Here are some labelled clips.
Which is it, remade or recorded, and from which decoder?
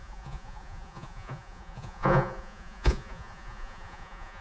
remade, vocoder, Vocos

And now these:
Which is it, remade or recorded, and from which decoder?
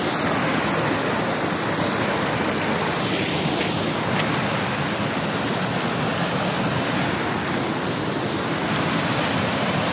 recorded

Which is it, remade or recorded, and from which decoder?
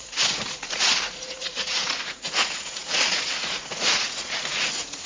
remade, vocoder, Vocos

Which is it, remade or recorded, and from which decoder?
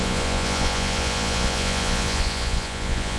remade, vocoder, Vocos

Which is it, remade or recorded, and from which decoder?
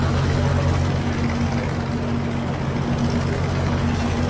recorded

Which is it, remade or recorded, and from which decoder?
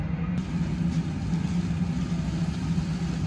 recorded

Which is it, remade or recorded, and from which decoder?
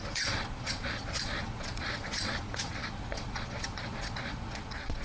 remade, vocoder, Vocos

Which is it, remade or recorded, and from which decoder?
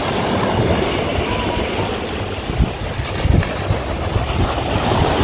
recorded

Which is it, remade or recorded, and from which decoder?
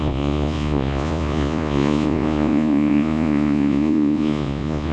remade, vocoder, Vocos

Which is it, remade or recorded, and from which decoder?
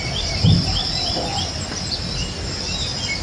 recorded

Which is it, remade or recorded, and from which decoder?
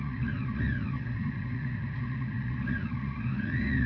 remade, vocoder, Vocos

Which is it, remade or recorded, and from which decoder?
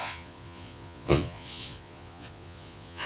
remade, vocoder, Vocos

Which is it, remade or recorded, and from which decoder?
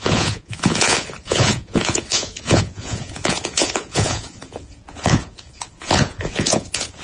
remade, vocoder, Vocos